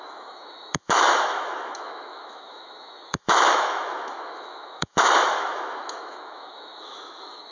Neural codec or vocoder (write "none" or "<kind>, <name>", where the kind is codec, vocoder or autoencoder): autoencoder, DAC-VAE